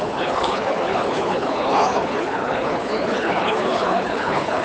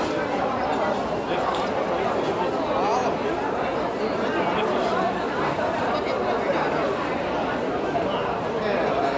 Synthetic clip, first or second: first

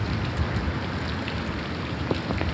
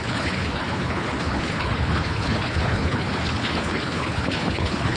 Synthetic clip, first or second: second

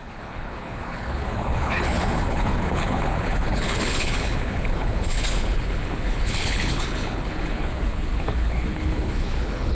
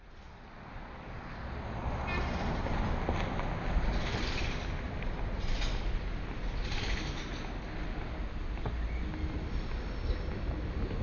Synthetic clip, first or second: first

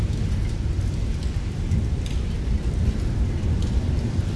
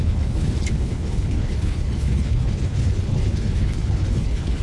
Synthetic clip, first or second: second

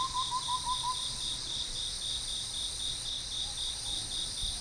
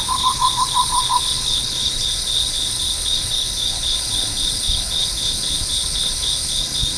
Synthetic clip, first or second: second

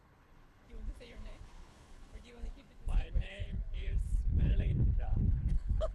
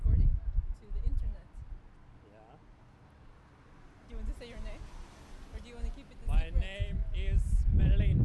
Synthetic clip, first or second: first